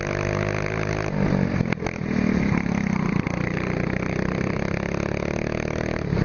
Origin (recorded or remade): recorded